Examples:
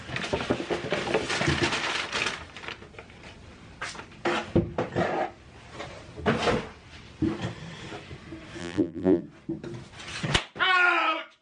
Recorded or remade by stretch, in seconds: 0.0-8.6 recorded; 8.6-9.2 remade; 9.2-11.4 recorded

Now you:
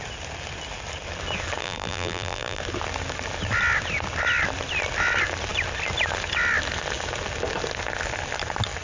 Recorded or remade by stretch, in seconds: 0.0-1.6 recorded; 1.6-2.6 remade; 2.6-8.8 recorded